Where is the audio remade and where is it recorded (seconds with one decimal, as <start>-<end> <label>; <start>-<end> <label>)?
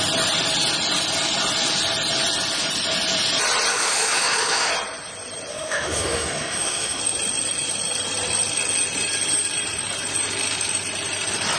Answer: 0.0-3.7 recorded; 3.7-4.7 remade; 4.7-5.5 recorded; 5.5-7.0 remade; 7.0-11.6 recorded